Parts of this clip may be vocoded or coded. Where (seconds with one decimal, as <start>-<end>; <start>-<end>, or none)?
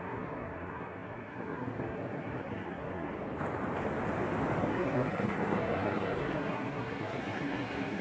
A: 0.0-3.1; 4.6-8.0